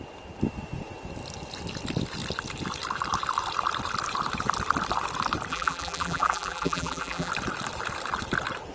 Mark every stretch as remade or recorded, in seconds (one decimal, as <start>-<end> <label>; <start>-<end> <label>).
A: 0.0-5.5 recorded; 5.5-7.3 remade; 7.3-8.7 recorded